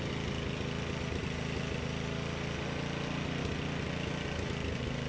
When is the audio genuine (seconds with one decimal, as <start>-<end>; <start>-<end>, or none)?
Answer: 0.0-5.1